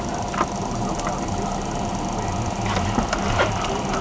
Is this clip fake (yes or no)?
no